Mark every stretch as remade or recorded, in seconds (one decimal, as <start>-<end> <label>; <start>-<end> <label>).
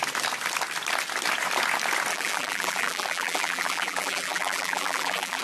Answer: 0.0-2.1 recorded; 2.1-5.4 remade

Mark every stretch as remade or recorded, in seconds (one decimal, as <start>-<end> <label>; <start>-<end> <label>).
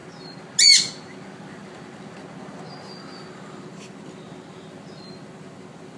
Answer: 0.0-6.0 recorded